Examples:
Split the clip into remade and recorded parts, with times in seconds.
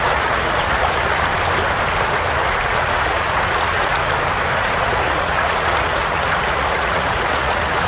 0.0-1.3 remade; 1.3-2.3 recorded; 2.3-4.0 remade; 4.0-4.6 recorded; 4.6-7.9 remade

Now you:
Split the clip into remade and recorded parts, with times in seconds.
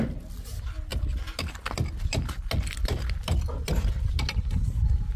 0.0-5.2 recorded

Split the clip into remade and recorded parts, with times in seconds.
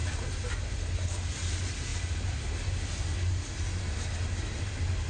0.0-5.1 recorded